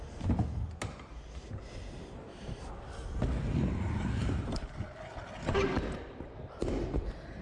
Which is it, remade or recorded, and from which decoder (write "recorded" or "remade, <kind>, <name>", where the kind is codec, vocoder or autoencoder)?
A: recorded